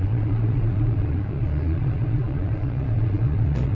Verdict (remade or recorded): remade